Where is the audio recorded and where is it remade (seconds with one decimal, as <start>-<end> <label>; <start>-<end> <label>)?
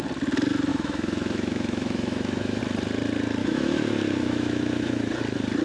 0.0-0.7 recorded; 0.7-2.6 remade; 2.6-3.4 recorded; 3.4-5.1 remade; 5.1-5.6 recorded